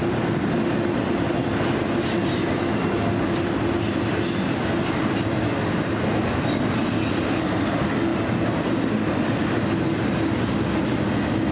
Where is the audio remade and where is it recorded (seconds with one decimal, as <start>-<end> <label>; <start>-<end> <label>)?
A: 0.0-11.5 recorded